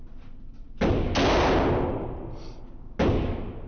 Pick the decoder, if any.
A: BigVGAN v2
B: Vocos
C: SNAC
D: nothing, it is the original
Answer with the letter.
D